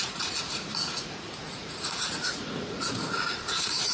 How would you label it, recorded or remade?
remade